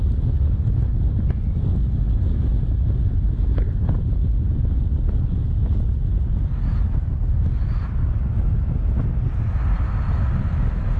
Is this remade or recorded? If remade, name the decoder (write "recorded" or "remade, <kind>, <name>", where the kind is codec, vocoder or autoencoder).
recorded